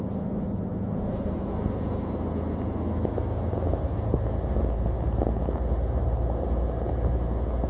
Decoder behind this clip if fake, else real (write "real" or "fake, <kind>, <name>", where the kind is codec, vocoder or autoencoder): real